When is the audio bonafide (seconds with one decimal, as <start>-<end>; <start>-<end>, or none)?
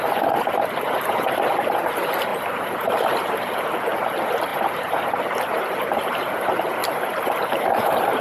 0.0-2.3; 3.5-6.8